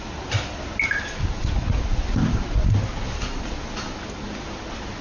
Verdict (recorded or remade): recorded